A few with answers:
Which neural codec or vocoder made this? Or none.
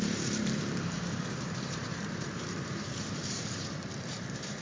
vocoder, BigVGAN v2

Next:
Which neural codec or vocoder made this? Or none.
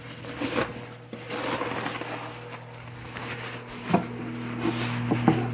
none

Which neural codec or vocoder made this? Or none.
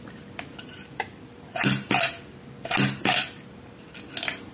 none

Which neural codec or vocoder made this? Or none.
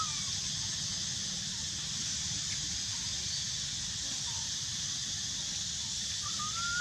none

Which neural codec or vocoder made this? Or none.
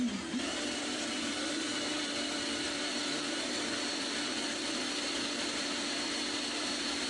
vocoder, BigVGAN v2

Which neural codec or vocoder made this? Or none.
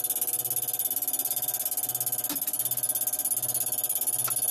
none